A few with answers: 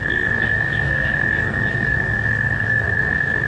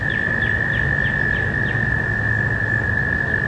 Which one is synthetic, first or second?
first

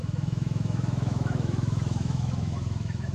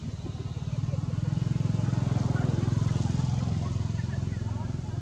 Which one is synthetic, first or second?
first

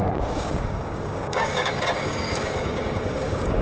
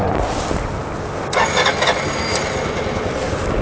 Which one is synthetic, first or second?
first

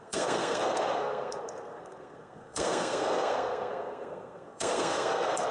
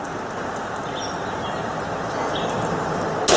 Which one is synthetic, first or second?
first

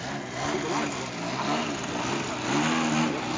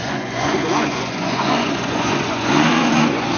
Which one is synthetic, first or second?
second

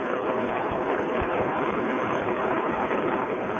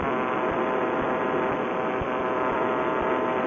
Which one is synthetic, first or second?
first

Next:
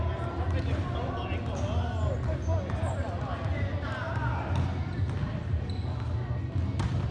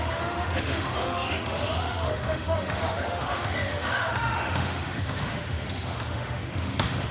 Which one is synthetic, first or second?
second